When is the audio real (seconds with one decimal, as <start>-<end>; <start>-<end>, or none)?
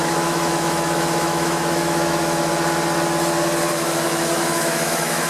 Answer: 2.5-3.7